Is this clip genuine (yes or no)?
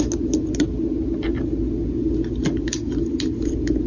yes